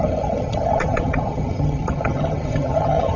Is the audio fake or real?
fake